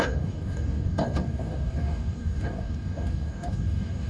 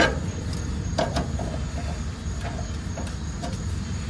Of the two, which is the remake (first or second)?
first